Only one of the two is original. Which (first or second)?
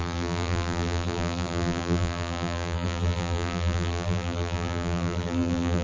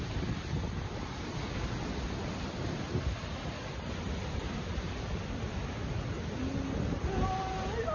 second